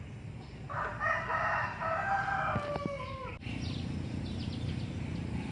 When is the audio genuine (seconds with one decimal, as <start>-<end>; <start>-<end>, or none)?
0.0-5.5